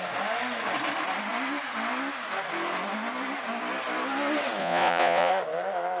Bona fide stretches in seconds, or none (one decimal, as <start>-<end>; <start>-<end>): 0.0-4.6; 5.3-6.0